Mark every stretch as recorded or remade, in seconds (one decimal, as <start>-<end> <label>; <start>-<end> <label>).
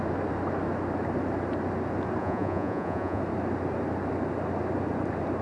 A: 0.0-2.2 recorded; 2.2-3.2 remade; 3.2-5.4 recorded